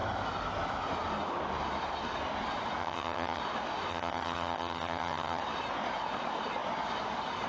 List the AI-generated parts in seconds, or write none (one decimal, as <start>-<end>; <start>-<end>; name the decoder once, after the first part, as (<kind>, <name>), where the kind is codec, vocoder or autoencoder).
2.8-3.4 (vocoder, HiFi-GAN); 3.9-5.4